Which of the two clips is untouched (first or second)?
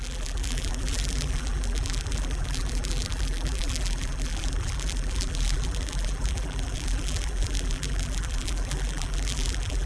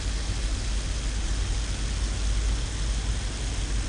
second